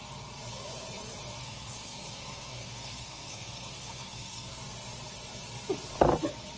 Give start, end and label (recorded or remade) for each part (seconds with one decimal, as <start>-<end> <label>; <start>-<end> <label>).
0.0-1.4 recorded; 1.4-4.6 remade; 4.6-6.6 recorded